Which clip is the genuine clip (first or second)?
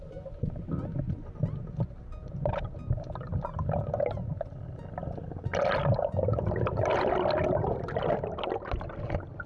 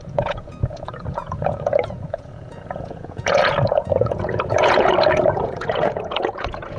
first